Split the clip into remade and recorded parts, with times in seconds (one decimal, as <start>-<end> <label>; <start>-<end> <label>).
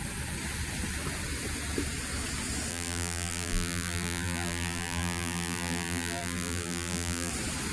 0.0-2.7 recorded; 2.7-7.3 remade; 7.3-7.7 recorded